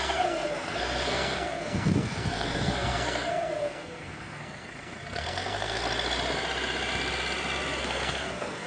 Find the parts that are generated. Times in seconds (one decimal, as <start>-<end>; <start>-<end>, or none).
0.0-5.8; 7.8-8.7